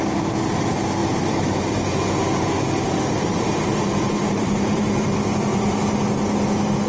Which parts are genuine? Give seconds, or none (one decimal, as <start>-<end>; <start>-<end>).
0.0-1.0; 2.0-3.3; 5.6-6.9